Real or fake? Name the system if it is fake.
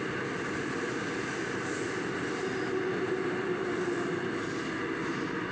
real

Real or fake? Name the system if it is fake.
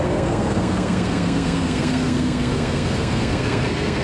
fake, codec, SNAC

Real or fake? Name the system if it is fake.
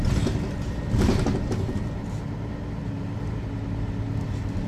real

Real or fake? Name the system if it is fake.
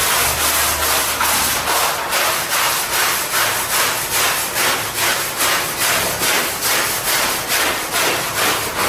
real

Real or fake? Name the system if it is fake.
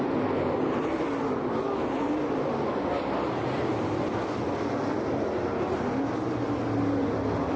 real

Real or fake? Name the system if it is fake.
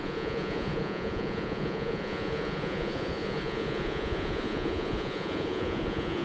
fake, vocoder, Vocos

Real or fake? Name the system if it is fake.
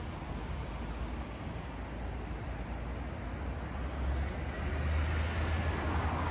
real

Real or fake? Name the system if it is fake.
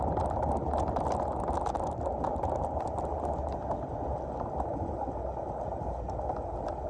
real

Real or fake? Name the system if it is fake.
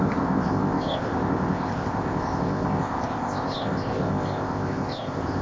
fake, codec, ZipCodec